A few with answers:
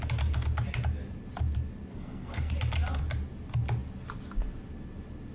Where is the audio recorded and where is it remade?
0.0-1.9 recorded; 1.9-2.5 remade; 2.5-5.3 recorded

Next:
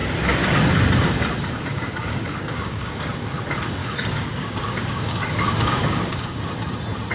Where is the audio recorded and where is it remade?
0.0-1.7 recorded; 1.7-3.1 remade; 3.1-3.8 recorded; 3.8-6.5 remade; 6.5-7.1 recorded

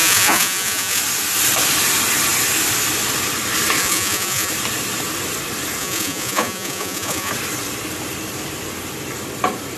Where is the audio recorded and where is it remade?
0.0-1.0 remade; 1.0-3.8 recorded; 3.8-4.5 remade; 4.5-5.8 recorded; 5.8-7.3 remade; 7.3-9.8 recorded